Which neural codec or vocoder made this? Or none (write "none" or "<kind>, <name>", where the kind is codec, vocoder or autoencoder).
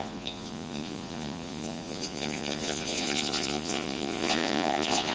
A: vocoder, Vocos